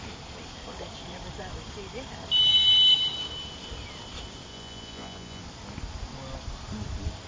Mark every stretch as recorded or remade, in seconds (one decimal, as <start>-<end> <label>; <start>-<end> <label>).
0.0-4.5 recorded; 4.5-5.4 remade; 5.4-7.3 recorded